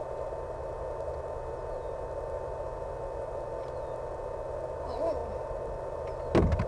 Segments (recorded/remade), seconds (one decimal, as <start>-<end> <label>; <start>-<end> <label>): 0.0-6.7 recorded